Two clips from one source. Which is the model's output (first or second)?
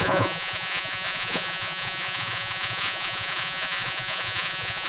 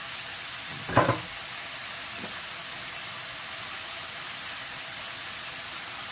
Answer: first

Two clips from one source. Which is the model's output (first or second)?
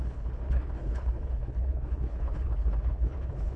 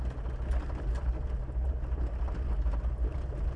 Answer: first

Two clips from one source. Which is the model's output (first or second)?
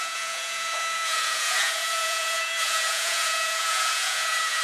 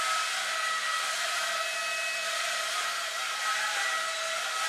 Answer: first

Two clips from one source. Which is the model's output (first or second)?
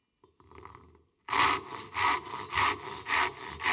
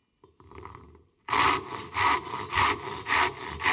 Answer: second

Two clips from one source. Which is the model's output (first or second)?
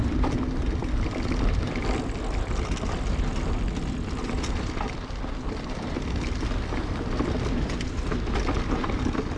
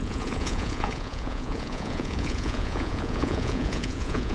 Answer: second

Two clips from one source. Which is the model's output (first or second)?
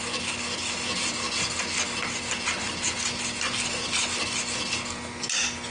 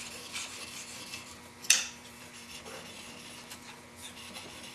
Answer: second